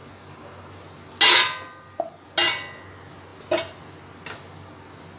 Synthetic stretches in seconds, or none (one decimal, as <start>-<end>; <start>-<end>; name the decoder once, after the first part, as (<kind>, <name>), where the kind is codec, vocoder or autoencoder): none